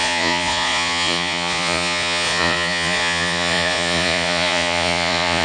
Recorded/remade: remade